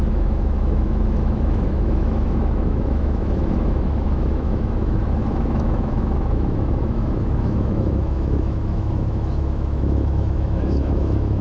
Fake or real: fake